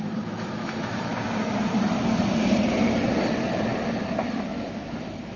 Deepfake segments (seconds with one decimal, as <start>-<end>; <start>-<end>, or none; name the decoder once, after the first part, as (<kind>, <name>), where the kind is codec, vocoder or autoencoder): 0.0-1.1 (autoencoder, DAC-VAE); 4.2-5.4